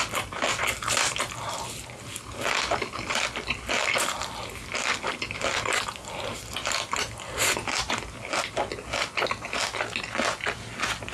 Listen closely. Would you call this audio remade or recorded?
recorded